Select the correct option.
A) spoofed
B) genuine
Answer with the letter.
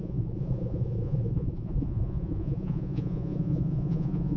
A